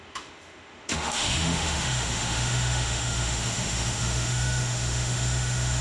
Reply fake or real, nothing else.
fake